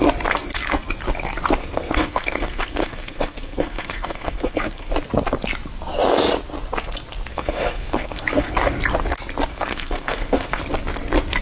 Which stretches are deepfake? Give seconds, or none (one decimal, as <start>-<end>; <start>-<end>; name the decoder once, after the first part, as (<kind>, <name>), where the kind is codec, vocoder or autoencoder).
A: 1.6-4.9 (codec, SNAC); 7.3-8.5; 9.5-10.6